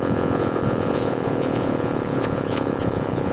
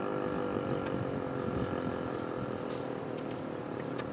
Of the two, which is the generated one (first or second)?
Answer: first